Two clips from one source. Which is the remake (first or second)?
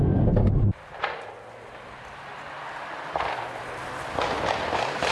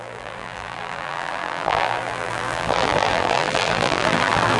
second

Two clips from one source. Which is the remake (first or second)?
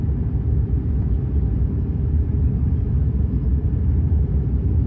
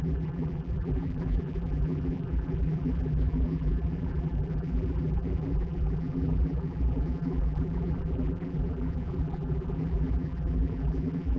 second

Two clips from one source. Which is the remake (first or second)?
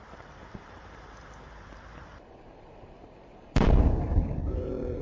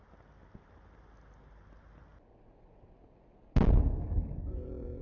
first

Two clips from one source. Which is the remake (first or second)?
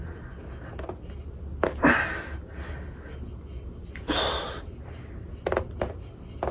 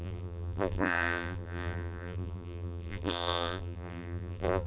second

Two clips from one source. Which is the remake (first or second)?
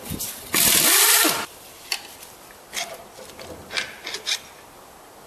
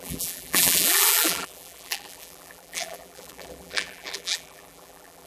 second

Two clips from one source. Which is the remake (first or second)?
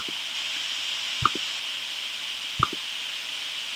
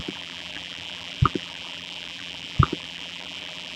second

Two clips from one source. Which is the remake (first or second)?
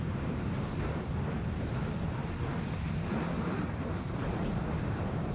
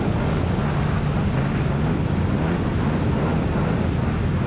first